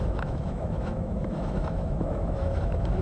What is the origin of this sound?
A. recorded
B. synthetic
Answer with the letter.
B